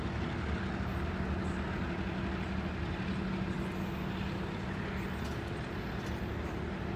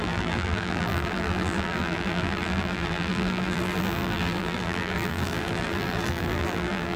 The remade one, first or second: second